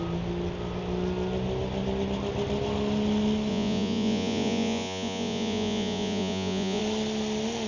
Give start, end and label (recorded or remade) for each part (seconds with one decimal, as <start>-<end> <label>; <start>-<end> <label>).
0.0-3.5 recorded; 3.5-6.8 remade; 6.8-7.7 recorded